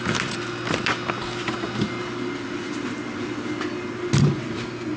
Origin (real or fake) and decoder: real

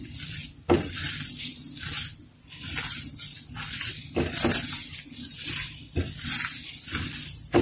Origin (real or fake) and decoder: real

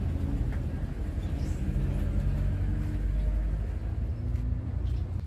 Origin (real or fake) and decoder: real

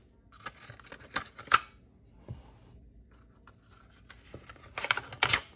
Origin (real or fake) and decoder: real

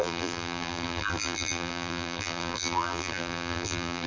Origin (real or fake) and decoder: fake, vocoder, BigVGAN v2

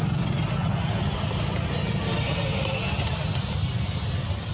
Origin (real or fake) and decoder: real